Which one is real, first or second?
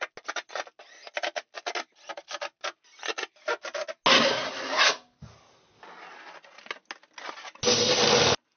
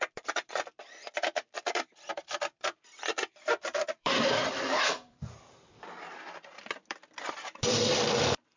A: first